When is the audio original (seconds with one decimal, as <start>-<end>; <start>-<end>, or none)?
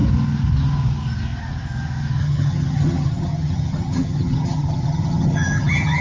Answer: 0.0-2.2